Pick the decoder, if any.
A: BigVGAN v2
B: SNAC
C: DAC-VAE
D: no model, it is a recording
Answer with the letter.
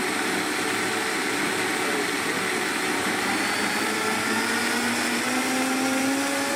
D